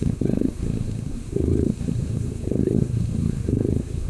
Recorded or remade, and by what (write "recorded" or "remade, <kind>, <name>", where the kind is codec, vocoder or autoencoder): remade, codec, SNAC